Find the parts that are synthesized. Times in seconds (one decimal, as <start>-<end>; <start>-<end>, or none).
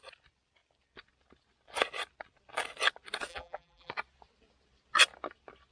3.3-3.9